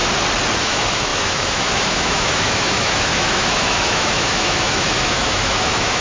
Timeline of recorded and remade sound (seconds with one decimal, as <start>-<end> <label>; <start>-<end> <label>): 0.0-0.6 recorded; 0.6-6.0 remade